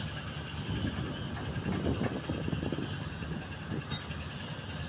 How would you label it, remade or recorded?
recorded